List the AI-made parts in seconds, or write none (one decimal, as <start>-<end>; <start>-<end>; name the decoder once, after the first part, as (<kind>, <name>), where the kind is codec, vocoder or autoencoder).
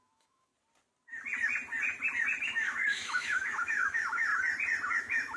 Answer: 0.0-0.5 (autoencoder, DAC-VAE); 2.4-4.3; 5.0-5.4